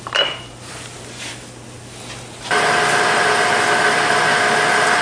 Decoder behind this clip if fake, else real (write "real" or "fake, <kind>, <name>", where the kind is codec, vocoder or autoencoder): real